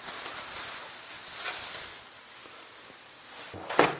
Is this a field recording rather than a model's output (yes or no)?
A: yes